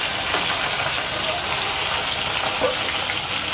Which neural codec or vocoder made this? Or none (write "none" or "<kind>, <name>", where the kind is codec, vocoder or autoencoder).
none